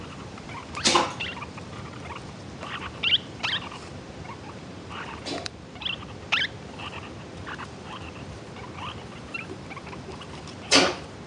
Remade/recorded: remade